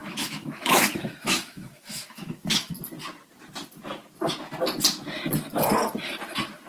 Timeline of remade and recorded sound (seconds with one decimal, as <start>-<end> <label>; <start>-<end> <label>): 0.0-2.7 remade; 2.7-6.7 recorded